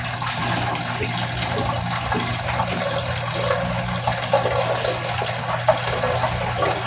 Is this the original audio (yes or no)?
yes